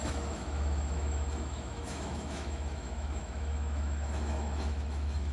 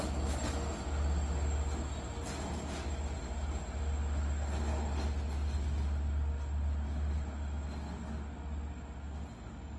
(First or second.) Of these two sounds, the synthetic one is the first